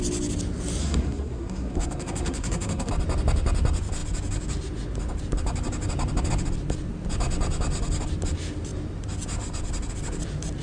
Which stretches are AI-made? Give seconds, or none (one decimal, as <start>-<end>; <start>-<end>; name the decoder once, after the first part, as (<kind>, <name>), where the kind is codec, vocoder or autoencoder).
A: 0.8-2.9 (codec, SNAC)